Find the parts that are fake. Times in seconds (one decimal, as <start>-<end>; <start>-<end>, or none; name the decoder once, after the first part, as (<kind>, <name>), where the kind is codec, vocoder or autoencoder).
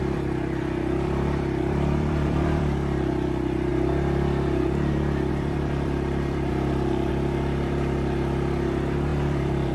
0.0-3.7 (vocoder, BigVGAN v2); 5.3-6.5; 7.1-9.7